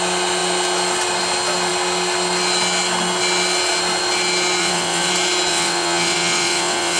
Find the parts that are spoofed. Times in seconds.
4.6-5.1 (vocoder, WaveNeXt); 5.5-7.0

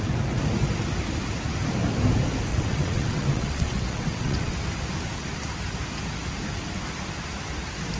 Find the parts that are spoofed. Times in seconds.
2.5-4.5 (vocoder, WaveNeXt)

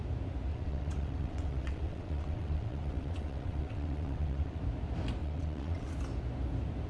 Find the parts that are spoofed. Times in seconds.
0.5-4.6 (vocoder, WaveNeXt); 5.2-5.9

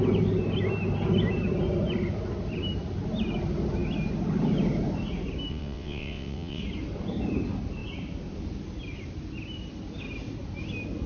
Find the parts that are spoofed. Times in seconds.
5.5-6.6 (vocoder, WaveNeXt)

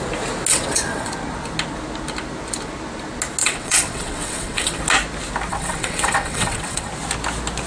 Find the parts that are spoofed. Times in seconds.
0.5-1.1 (vocoder, WaveNeXt); 3.4-4.8; 5.5-6.9